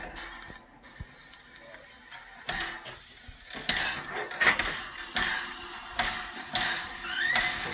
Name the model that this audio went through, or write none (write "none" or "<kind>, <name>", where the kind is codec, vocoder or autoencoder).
none